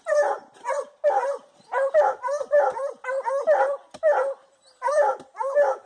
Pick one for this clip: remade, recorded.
recorded